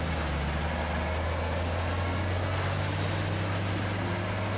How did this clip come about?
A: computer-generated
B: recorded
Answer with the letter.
B